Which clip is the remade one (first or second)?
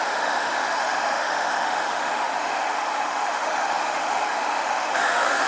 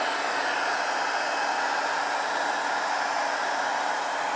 first